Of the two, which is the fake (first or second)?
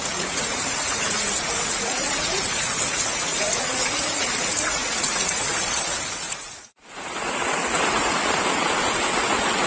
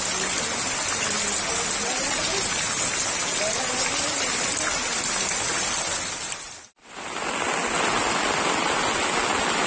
first